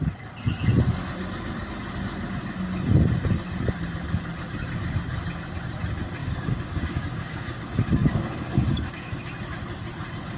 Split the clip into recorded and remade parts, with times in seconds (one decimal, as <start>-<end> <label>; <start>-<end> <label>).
0.0-6.2 recorded; 6.2-7.6 remade; 7.6-8.0 recorded; 8.0-9.2 remade; 9.2-10.4 recorded